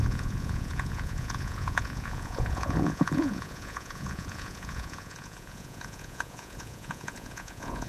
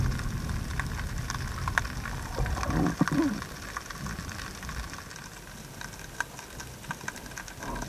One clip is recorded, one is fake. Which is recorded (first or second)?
second